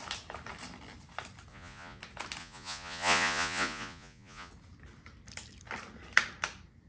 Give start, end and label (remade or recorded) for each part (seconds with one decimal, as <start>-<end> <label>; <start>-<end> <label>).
0.0-1.5 recorded; 1.5-2.0 remade; 2.0-2.4 recorded; 2.4-4.5 remade; 4.5-6.9 recorded